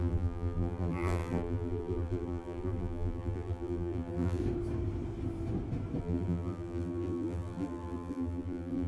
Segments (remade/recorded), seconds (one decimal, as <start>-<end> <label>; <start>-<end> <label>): 0.0-4.4 remade; 4.4-6.0 recorded; 6.0-8.9 remade